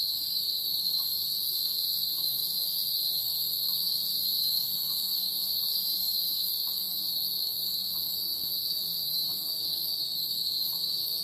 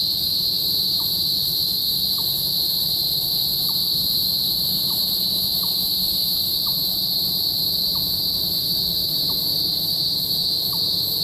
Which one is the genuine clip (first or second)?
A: second